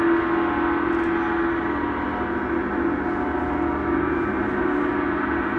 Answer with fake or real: real